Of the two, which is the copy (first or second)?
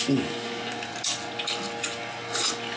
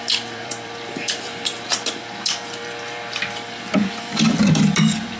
second